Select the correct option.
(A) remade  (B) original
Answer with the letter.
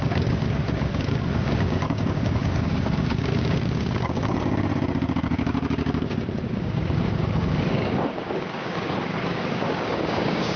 A